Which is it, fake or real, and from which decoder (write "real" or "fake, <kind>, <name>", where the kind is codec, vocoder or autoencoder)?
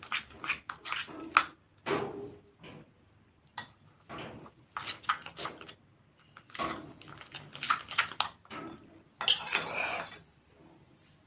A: real